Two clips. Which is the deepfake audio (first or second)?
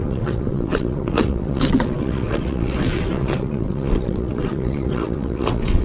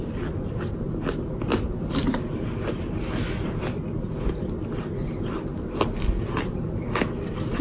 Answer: first